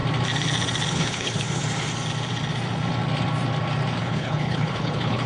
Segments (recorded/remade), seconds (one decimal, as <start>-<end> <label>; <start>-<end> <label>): 0.0-0.9 recorded; 0.9-1.6 remade; 1.6-4.0 recorded; 4.0-5.3 remade